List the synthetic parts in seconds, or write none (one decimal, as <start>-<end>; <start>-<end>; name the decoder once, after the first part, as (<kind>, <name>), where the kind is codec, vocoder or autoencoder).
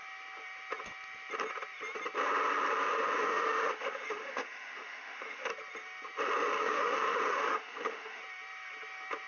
3.2-5.5 (autoencoder, DAC-VAE); 6.6-8.2